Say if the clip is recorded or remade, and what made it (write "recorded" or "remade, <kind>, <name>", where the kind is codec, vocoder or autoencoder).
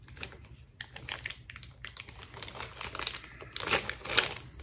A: recorded